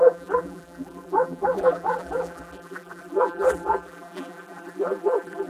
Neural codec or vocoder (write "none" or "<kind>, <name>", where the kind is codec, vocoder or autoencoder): vocoder, BigVGAN v2